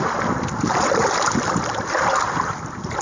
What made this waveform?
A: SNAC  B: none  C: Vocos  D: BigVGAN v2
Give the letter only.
B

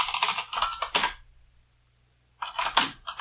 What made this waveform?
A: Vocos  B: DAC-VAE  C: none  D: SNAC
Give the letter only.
C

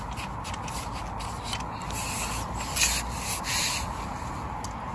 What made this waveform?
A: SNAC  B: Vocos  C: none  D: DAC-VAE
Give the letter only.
C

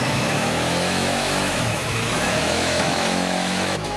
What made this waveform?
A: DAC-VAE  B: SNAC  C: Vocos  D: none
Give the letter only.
A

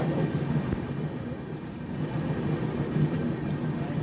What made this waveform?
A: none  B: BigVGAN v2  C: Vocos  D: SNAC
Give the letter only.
A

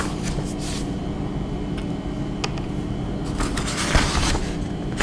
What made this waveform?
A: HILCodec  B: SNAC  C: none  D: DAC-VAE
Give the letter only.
C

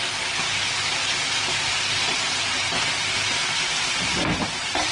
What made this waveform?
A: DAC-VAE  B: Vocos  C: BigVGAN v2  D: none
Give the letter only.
D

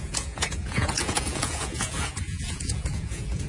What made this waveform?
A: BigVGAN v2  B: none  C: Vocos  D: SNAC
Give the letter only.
C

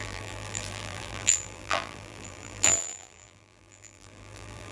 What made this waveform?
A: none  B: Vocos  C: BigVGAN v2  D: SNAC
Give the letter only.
C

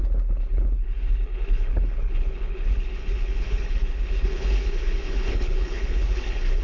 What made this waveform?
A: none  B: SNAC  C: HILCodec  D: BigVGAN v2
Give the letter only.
C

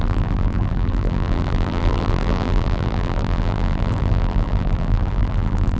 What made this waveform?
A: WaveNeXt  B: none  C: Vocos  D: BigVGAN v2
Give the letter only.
D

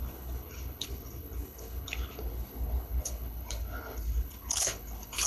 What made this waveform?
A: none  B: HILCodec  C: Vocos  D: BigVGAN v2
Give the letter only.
B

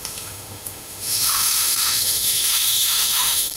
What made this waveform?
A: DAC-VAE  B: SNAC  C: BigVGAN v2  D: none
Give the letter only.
A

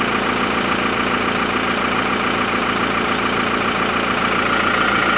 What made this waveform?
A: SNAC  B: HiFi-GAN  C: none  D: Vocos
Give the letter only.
C